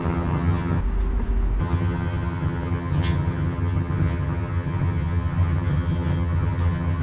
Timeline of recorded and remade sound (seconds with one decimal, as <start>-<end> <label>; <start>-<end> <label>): 0.0-0.8 remade; 0.8-1.6 recorded; 1.6-7.0 remade